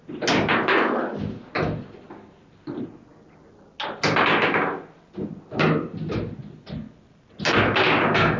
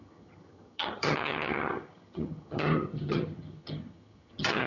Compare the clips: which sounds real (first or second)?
first